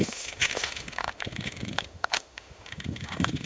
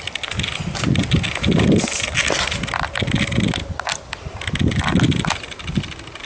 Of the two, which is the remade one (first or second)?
first